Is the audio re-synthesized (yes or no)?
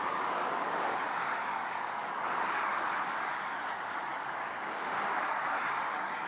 yes